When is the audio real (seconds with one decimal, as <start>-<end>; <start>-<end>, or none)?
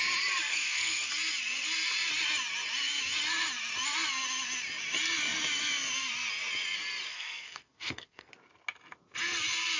0.0-0.5; 1.1-7.1; 8.3-9.8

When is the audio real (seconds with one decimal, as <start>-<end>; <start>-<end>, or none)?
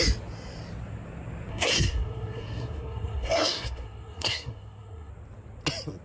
0.0-1.5; 5.1-6.0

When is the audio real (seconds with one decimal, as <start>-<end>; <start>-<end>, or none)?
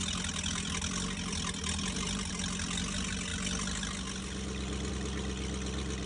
0.0-6.1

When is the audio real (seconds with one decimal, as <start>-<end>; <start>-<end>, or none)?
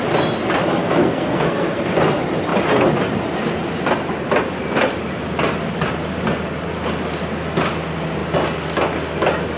0.0-0.8; 1.9-9.6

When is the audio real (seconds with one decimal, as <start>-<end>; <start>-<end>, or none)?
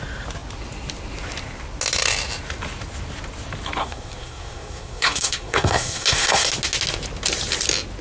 0.0-3.8; 6.5-8.0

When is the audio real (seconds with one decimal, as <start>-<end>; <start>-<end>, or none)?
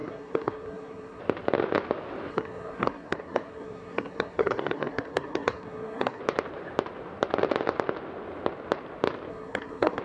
1.2-2.3; 6.2-9.3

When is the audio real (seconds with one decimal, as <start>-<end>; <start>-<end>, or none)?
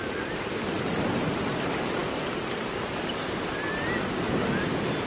0.0-5.1